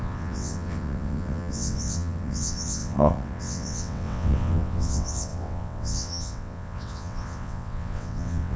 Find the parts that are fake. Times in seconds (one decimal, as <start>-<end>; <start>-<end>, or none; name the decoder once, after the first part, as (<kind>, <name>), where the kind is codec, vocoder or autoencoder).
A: 0.0-8.6 (vocoder, WaveNeXt)